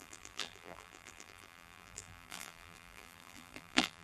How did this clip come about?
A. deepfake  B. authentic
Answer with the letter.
A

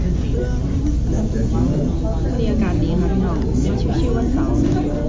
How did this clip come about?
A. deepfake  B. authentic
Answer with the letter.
B